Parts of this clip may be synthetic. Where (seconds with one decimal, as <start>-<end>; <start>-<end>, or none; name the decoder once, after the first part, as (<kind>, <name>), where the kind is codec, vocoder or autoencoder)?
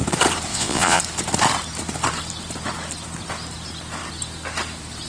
0.5-1.0 (vocoder, Vocos)